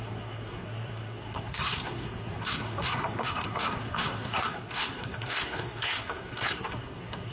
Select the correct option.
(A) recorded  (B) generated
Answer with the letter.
B